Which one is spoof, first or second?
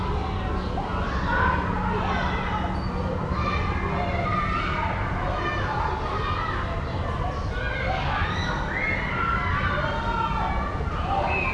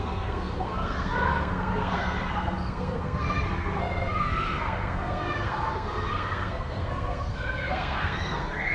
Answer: second